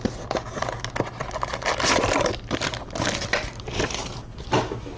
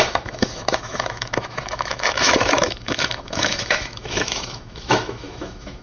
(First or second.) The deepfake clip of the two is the second